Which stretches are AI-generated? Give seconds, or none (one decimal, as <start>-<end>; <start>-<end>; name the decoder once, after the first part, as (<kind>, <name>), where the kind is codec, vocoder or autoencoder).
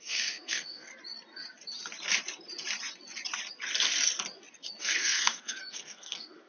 0.0-0.9 (codec, SNAC); 4.8-6.5